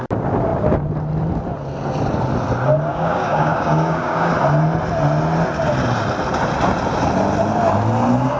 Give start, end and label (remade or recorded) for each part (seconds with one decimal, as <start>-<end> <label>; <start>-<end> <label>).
0.0-2.9 recorded; 2.9-4.3 remade; 4.3-8.4 recorded